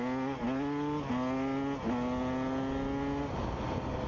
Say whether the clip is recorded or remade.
recorded